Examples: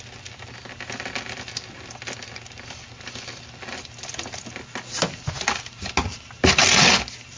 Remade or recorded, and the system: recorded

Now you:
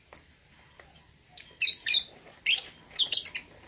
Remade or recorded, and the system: recorded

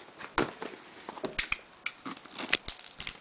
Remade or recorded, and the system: recorded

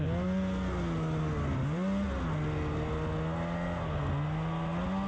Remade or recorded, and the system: recorded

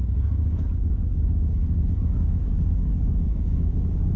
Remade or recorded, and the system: remade, codec, DAC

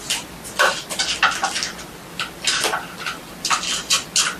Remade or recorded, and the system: recorded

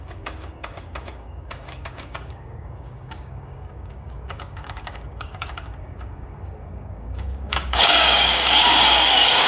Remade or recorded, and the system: remade, codec, DAC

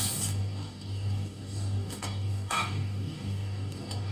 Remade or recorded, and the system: remade, codec, DAC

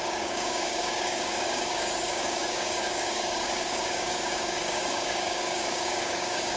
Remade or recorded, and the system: remade, codec, DAC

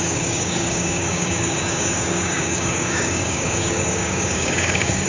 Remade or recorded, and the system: remade, codec, DAC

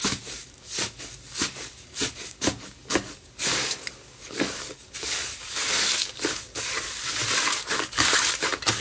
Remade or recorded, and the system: remade, codec, DAC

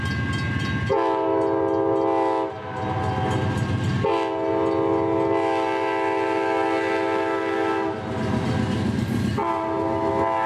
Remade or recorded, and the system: recorded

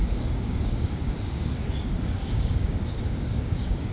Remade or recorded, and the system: remade, codec, DAC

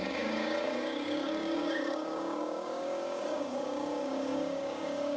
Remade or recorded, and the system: remade, codec, DAC